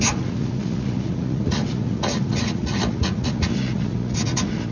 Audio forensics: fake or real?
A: fake